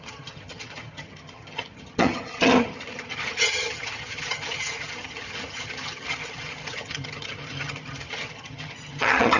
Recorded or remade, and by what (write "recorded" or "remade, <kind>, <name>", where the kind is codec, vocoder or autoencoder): remade, vocoder, HiFi-GAN